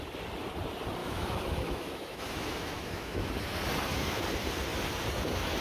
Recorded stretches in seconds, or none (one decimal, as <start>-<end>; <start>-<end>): 0.0-1.0; 3.3-5.6